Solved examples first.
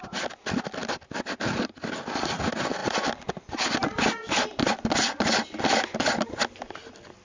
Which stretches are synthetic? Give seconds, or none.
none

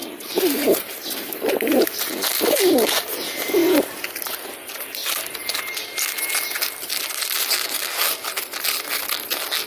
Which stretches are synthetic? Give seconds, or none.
0.0-2.1 (vocoder, BigVGAN v2)

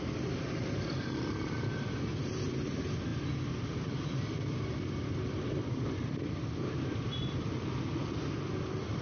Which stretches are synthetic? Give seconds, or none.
0.0-9.0 (vocoder, BigVGAN v2)

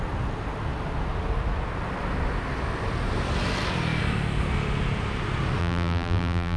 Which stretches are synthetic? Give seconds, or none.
5.6-6.6 (vocoder, BigVGAN v2)

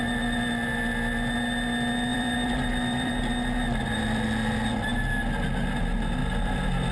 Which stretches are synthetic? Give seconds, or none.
2.1-3.1 (vocoder, BigVGAN v2); 6.2-6.9

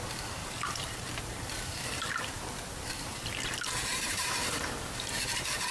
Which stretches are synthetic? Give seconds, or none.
0.4-3.1 (vocoder, BigVGAN v2); 3.9-5.1

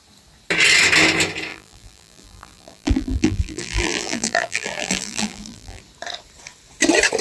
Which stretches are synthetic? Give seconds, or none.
1.5-5.8 (vocoder, BigVGAN v2)